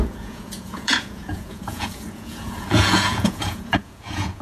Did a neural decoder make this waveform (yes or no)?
yes